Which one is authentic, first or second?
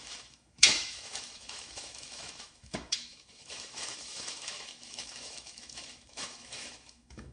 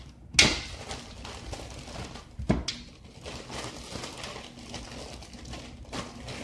second